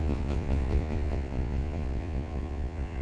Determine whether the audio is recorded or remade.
remade